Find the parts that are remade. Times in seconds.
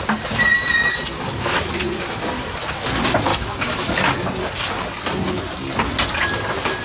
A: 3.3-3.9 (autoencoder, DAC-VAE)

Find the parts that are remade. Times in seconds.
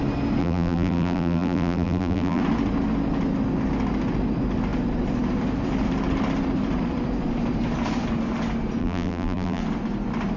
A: 0.4-2.4 (vocoder, BigVGAN v2); 8.8-9.6